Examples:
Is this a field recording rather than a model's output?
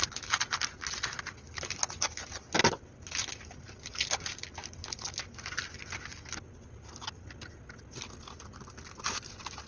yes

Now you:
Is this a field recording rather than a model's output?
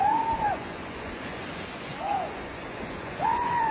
no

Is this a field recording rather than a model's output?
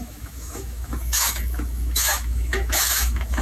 no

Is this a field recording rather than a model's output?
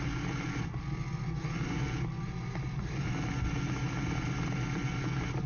yes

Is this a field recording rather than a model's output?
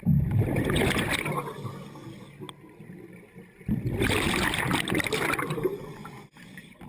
yes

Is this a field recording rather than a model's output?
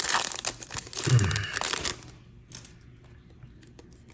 yes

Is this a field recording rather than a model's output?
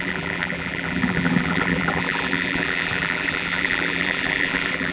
no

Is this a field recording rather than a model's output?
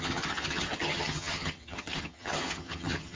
no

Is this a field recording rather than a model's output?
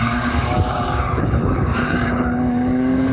no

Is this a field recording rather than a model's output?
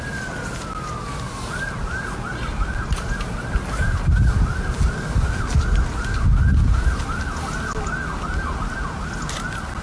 yes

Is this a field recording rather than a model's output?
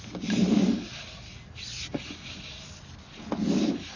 yes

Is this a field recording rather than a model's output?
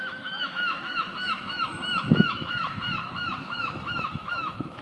no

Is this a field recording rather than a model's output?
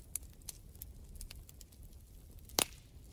yes